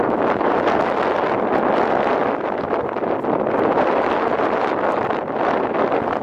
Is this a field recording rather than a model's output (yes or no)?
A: yes